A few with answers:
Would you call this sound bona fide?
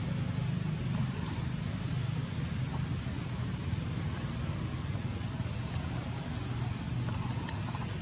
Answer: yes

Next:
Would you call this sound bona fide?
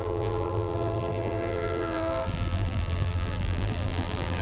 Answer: no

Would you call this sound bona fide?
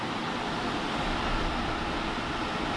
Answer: yes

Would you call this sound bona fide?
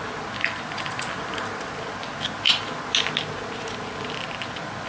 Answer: yes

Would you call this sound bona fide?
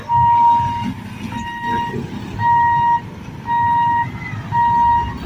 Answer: yes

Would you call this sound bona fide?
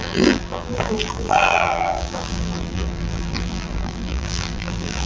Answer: no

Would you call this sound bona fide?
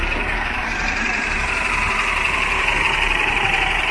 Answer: no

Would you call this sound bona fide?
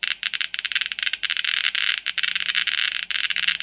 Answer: no